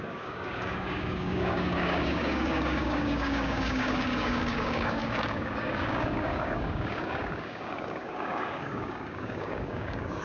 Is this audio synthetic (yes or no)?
yes